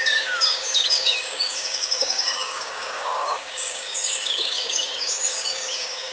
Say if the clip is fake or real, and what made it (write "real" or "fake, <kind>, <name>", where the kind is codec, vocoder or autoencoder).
fake, codec, DAC